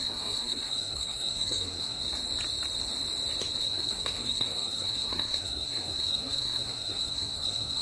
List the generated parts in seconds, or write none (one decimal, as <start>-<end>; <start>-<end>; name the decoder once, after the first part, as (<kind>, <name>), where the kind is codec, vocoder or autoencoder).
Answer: 0.0-2.0 (codec, SNAC); 3.6-7.8